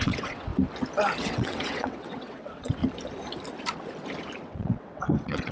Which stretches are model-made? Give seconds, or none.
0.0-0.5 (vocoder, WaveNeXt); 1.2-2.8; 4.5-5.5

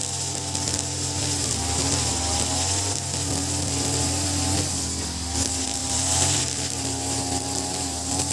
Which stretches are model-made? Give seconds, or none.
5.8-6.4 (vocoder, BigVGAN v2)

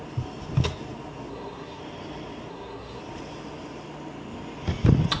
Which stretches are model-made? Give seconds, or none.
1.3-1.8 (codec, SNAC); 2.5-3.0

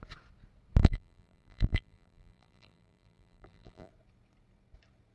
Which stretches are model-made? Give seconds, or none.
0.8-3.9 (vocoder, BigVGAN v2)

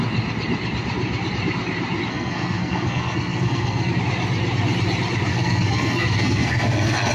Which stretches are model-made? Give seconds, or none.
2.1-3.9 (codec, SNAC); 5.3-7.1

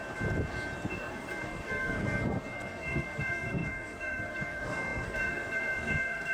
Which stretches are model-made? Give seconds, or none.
0.9-6.3 (codec, SNAC)

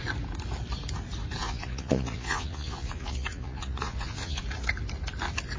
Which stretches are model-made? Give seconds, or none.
1.4-4.4 (vocoder, Vocos)